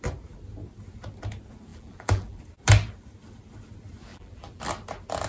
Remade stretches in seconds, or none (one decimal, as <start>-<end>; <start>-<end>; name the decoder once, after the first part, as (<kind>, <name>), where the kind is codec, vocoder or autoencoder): 1.7-2.4 (vocoder, BigVGAN v2); 4.1-4.6